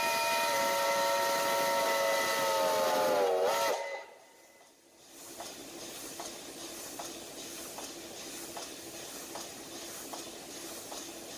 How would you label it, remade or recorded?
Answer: recorded